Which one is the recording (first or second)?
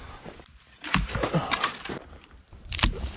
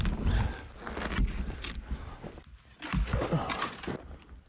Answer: second